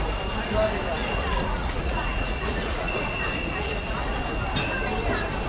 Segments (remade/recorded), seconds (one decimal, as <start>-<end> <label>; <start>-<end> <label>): 0.0-1.0 recorded; 1.0-4.2 remade; 4.2-5.5 recorded